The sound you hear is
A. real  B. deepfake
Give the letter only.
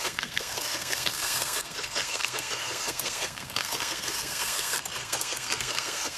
B